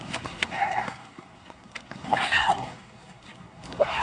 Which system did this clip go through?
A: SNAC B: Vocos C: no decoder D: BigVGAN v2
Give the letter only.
A